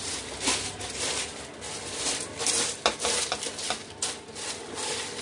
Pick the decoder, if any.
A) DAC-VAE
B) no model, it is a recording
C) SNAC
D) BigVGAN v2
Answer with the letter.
B